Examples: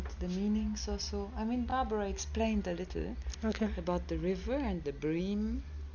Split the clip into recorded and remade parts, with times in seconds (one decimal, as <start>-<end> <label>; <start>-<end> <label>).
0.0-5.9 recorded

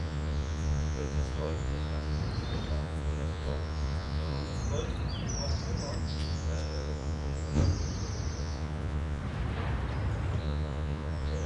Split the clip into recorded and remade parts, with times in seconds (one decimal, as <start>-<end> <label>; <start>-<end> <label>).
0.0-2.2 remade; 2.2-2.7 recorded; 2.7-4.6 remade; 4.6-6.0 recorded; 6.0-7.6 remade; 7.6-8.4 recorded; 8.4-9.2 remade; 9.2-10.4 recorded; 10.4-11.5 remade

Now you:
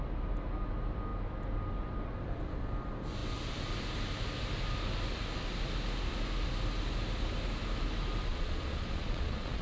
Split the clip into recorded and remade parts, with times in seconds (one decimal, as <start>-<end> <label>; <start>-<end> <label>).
0.0-8.3 recorded; 8.3-9.6 remade

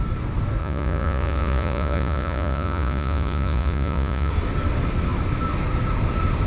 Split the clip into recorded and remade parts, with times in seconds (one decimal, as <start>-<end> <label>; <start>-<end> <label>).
0.0-0.6 recorded; 0.6-4.3 remade; 4.3-6.5 recorded

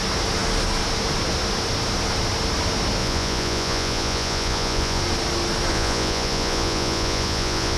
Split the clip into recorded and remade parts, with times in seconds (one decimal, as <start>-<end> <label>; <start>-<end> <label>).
0.0-3.0 recorded; 3.0-5.0 remade; 5.0-5.7 recorded; 5.7-7.8 remade

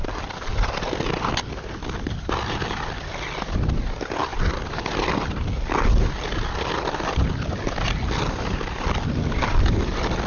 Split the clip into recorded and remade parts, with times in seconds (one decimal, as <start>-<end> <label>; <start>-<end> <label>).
0.0-10.3 recorded